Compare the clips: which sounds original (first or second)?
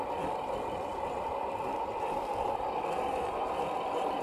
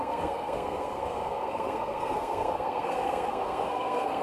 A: first